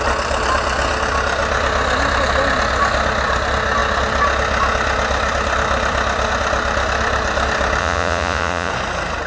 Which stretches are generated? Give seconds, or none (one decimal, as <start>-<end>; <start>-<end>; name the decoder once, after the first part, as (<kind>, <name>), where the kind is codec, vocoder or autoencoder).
7.8-8.7 (vocoder, Vocos)